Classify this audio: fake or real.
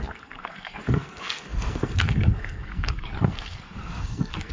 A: fake